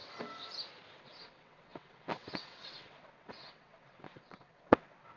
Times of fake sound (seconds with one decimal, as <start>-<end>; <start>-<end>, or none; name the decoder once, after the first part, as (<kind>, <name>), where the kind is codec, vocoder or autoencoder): 1.0-5.2 (vocoder, WaveNeXt)